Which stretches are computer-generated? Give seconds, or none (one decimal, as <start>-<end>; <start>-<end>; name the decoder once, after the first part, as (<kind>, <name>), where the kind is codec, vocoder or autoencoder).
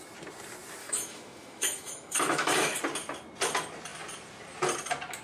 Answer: 0.8-2.8 (autoencoder, DAC-VAE)